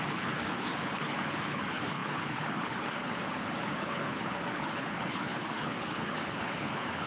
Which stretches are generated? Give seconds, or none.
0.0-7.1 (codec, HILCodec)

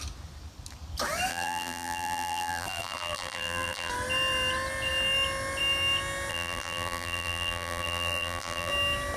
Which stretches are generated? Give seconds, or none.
1.3-3.9 (vocoder, BigVGAN v2); 6.3-8.7

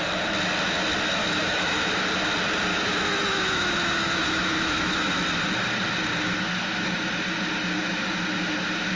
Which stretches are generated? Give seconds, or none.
1.2-1.9 (autoencoder, DAC-VAE); 2.7-5.1